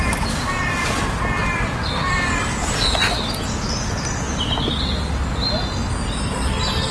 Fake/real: real